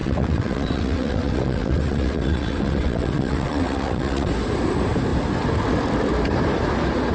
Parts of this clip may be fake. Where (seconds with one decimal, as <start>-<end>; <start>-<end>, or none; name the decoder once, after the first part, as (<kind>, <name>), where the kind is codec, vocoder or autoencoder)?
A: 0.0-4.3 (vocoder, WaveNeXt)